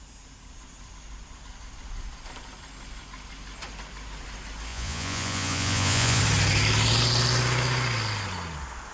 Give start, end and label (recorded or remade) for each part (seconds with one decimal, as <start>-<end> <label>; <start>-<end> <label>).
0.0-4.7 recorded; 4.7-6.2 remade; 6.2-8.9 recorded